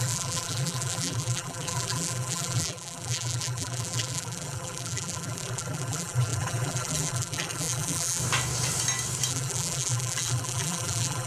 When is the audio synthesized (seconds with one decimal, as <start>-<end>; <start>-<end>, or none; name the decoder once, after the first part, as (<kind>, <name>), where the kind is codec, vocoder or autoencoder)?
0.0-8.2 (vocoder, BigVGAN v2); 9.3-11.3